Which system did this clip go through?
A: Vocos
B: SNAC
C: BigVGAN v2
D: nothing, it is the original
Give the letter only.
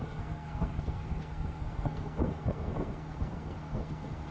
B